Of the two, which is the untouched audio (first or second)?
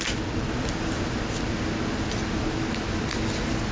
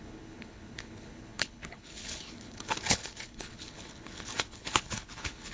first